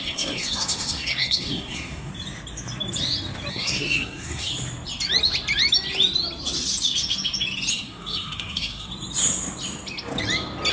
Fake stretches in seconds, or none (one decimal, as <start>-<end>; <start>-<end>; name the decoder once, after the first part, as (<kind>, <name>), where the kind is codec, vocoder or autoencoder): 0.0-2.1 (codec, SNAC); 3.5-4.5; 7.7-8.9